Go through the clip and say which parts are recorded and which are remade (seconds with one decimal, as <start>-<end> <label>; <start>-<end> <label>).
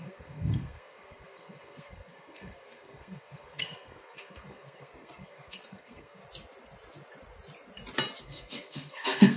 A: 0.0-6.2 remade; 6.2-8.2 recorded; 8.2-9.4 remade